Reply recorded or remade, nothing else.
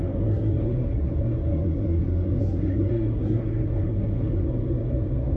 remade